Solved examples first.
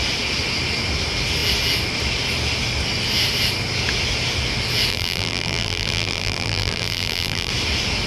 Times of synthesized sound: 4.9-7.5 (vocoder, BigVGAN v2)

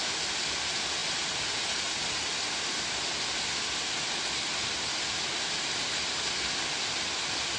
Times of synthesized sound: none

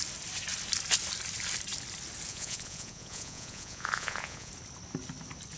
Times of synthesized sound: 2.3-4.5 (vocoder, Vocos)